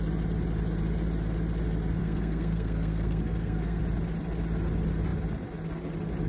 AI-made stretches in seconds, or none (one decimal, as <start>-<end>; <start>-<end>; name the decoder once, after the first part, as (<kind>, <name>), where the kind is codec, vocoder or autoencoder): 2.0-3.8 (codec, SNAC)